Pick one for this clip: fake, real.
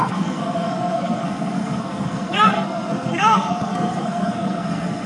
fake